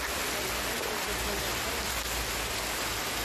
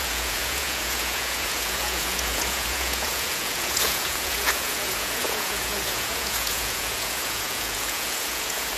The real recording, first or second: first